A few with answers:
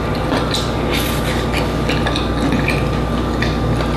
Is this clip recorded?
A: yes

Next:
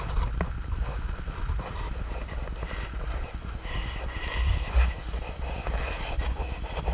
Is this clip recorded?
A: yes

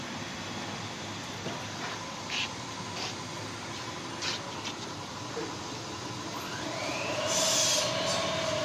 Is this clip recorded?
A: yes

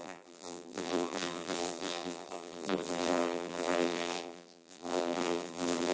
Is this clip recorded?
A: no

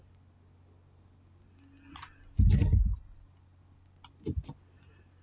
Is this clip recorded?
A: yes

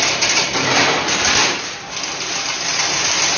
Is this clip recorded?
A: yes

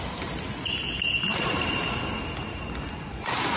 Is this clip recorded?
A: yes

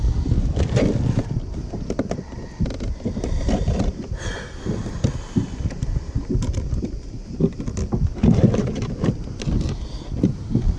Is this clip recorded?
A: yes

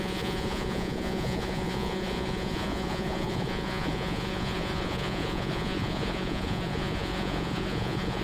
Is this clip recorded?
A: no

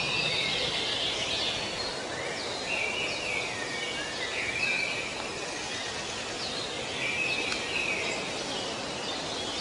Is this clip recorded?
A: yes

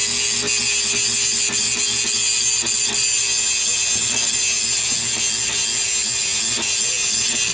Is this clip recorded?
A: yes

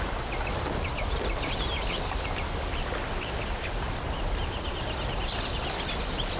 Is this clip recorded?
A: yes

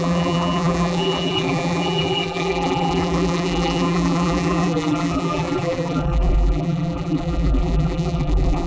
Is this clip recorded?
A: no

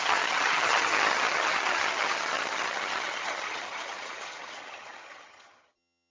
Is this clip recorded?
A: no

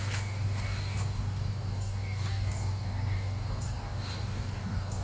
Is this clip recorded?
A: no